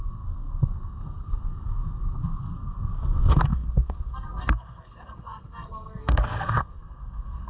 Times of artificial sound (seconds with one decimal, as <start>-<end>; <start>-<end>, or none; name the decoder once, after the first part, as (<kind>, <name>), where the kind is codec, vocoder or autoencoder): 0.0-7.5 (codec, SNAC)